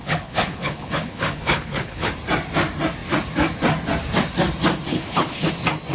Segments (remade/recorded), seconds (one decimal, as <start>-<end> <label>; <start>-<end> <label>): 0.0-2.1 remade; 2.1-4.9 recorded; 4.9-5.5 remade; 5.5-5.9 recorded